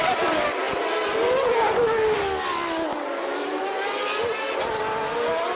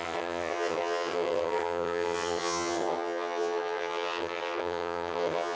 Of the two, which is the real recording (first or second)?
first